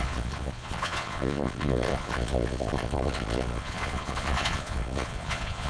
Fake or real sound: fake